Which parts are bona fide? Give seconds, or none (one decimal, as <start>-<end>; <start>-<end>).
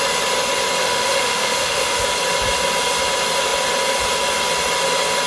0.0-0.8; 2.0-5.3